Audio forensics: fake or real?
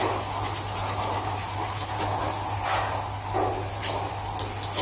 real